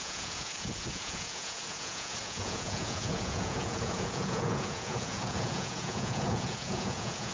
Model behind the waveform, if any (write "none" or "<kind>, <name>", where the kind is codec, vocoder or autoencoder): vocoder, Vocos